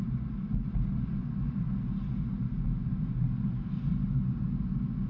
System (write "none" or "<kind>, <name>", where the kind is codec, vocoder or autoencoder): none